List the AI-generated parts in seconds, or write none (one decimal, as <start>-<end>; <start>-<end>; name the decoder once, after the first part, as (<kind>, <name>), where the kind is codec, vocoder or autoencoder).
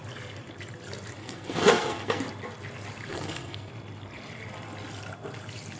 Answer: 1.2-2.2 (codec, SNAC); 3.1-3.7